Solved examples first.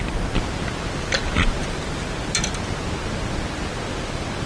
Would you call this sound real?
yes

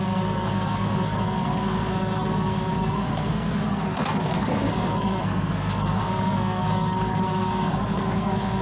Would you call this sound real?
no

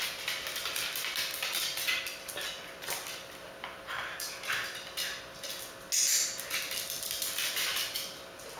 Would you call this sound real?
yes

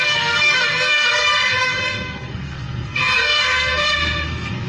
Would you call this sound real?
no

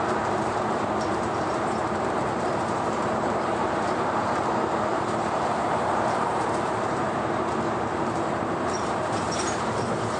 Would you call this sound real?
no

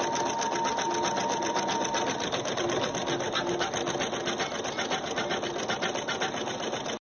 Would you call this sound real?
yes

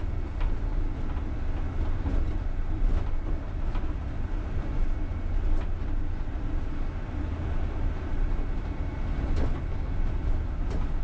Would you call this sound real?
yes